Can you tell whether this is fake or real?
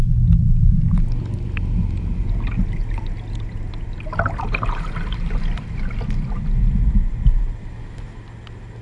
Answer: real